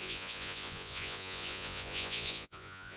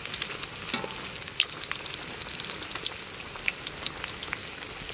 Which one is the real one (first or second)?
second